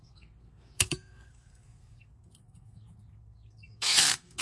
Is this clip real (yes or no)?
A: no